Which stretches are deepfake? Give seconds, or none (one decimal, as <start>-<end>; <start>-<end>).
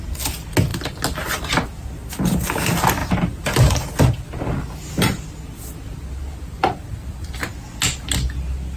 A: 3.0-4.0; 6.2-7.3